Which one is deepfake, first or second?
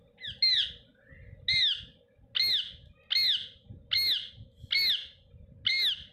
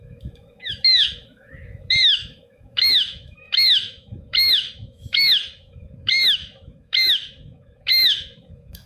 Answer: second